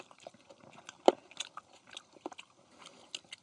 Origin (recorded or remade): recorded